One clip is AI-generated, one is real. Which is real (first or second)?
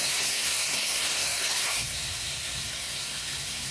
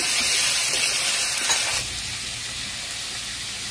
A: second